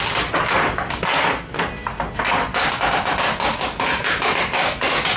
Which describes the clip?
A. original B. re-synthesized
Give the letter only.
A